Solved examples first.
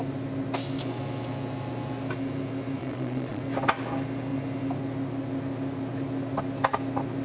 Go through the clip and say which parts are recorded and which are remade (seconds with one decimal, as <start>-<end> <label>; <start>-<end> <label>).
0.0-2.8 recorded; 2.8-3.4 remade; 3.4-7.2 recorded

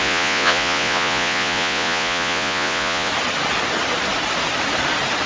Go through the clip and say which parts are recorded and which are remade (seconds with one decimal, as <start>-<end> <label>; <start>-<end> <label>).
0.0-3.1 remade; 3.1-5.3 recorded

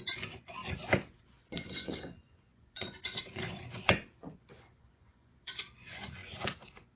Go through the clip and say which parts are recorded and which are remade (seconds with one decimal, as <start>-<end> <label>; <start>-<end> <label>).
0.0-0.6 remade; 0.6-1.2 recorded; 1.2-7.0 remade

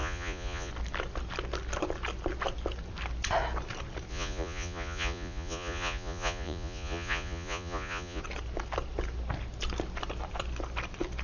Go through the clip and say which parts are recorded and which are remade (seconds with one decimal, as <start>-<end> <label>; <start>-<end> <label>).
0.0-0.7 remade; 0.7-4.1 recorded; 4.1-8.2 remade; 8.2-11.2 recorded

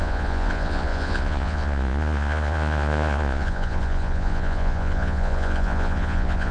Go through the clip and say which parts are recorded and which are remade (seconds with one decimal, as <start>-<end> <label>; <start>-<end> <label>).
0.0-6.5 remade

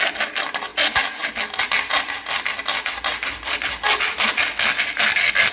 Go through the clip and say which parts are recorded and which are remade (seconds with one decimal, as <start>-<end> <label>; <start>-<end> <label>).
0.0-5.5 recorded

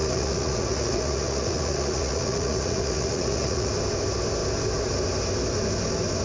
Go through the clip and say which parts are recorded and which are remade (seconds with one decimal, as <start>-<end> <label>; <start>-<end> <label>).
0.0-3.7 remade; 3.7-6.2 recorded

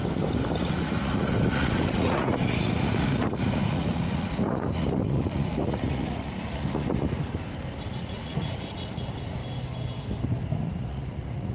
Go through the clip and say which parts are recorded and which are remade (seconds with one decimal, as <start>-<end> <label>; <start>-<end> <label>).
0.0-0.6 recorded; 0.6-7.3 remade; 7.3-7.9 recorded; 7.9-9.4 remade; 9.4-10.5 recorded; 10.5-11.5 remade